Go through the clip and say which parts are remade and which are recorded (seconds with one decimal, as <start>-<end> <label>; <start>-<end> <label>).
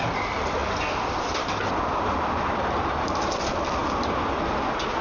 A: 0.0-3.8 recorded; 3.8-4.6 remade; 4.6-5.0 recorded